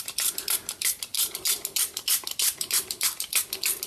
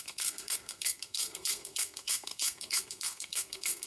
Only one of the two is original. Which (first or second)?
first